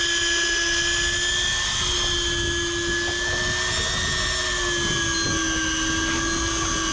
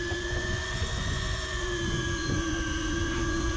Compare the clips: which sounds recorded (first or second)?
first